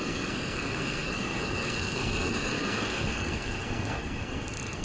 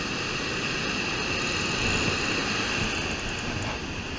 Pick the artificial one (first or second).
first